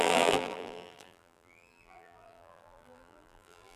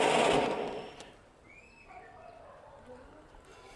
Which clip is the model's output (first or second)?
first